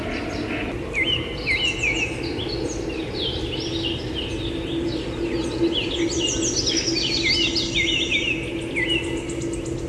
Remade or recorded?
recorded